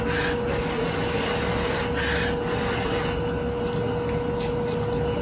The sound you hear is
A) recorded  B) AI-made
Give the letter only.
A